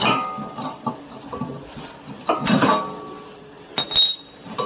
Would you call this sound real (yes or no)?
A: yes